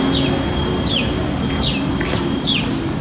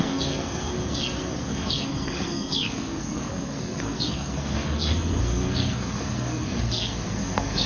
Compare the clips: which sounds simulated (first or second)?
second